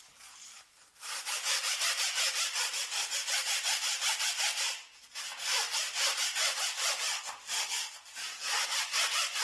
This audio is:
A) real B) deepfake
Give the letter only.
A